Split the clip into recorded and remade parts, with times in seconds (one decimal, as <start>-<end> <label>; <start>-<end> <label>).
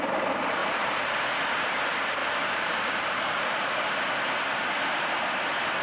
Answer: 0.0-0.6 recorded; 0.6-1.2 remade; 1.2-2.2 recorded; 2.2-3.9 remade; 3.9-5.8 recorded